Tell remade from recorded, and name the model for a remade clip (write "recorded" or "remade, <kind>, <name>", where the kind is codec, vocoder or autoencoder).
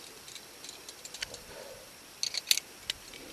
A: recorded